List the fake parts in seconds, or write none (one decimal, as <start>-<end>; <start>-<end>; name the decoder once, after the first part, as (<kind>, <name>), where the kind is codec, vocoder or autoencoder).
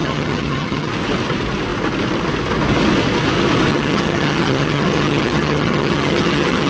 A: 0.0-0.9 (vocoder, HiFi-GAN); 3.7-6.7